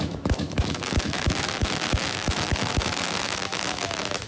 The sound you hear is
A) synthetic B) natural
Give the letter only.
A